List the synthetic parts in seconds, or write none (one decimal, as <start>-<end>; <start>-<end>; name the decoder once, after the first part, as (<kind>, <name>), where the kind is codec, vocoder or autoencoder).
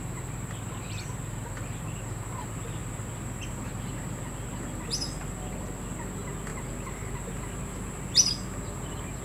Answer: none